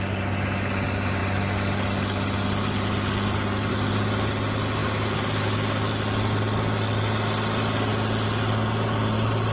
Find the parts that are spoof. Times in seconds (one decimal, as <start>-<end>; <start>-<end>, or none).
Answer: none